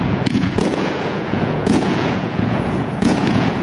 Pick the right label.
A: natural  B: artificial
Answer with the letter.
B